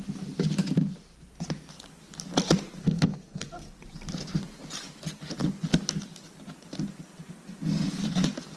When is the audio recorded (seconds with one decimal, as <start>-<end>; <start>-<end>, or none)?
0.0-2.8; 3.7-8.6